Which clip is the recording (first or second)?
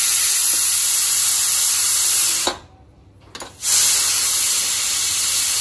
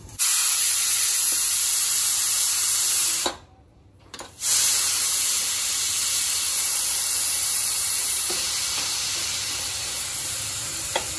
first